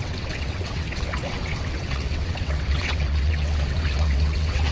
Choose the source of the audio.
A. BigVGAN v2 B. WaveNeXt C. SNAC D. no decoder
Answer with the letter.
B